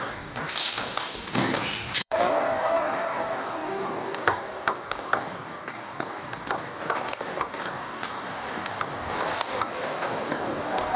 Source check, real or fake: fake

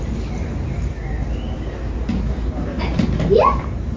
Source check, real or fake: real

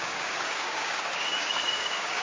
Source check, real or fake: fake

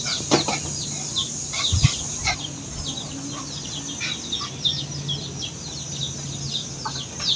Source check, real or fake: real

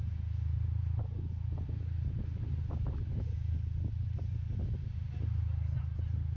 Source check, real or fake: real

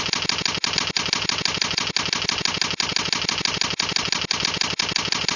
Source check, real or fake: real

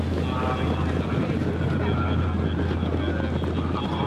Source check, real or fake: real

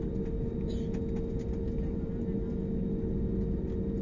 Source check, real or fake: real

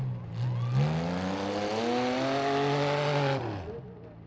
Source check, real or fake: real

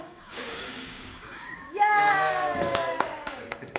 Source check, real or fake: fake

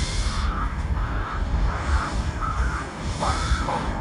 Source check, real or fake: fake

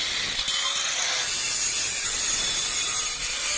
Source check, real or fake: real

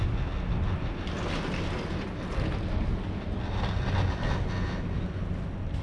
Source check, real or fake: real